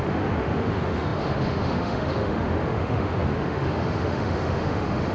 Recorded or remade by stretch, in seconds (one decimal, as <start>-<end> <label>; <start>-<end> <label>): 0.0-5.1 remade